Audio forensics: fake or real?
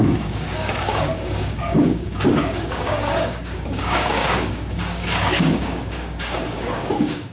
fake